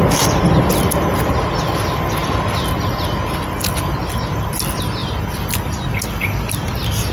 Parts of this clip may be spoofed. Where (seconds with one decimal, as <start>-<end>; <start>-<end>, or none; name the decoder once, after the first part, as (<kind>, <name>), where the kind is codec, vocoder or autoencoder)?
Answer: none